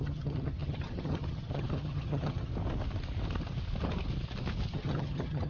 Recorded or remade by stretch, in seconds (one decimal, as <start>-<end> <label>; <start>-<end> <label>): 0.0-2.5 remade; 2.5-4.7 recorded; 4.7-5.5 remade